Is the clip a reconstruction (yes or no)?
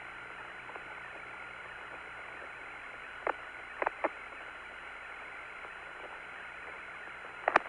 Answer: no